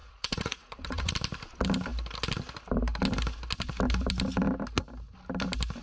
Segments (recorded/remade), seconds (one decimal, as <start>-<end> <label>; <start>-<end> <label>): 0.0-1.1 remade; 1.1-5.8 recorded